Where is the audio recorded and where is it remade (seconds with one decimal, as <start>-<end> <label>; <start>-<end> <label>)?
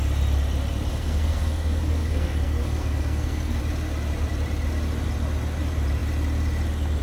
0.0-0.9 recorded; 0.9-3.6 remade; 3.6-7.0 recorded